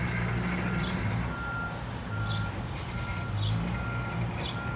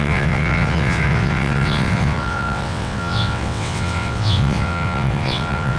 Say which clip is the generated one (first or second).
second